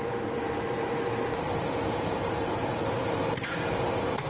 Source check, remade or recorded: remade